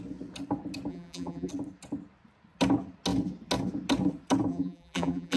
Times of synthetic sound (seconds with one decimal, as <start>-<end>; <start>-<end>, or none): 0.9-1.5; 4.5-5.4

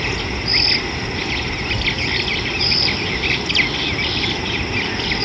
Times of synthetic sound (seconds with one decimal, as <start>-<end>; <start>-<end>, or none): 2.3-3.5

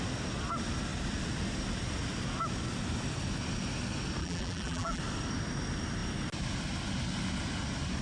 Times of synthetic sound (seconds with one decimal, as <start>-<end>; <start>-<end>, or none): 4.2-5.0

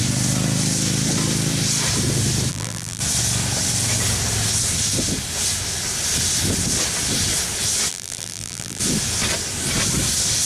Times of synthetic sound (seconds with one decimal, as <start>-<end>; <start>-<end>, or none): 2.5-3.0; 7.9-8.8

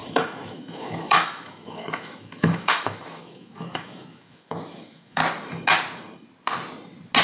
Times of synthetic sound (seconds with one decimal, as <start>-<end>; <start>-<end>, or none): 0.0-5.2